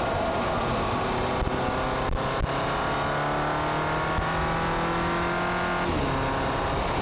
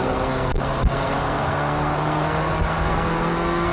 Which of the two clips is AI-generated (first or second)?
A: second